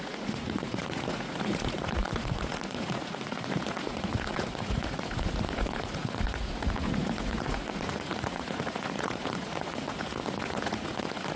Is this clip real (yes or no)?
no